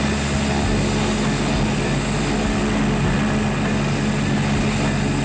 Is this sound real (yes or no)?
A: yes